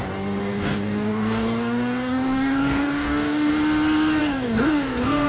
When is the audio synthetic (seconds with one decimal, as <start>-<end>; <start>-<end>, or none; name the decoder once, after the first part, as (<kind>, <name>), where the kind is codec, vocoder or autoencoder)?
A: 0.4-3.5 (codec, DAC); 4.2-5.3